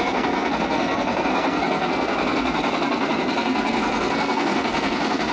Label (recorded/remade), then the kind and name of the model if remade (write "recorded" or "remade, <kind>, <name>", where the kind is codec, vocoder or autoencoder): remade, codec, SNAC